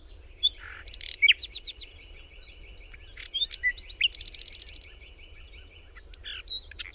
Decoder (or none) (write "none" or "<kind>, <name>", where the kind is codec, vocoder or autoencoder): vocoder, BigVGAN v2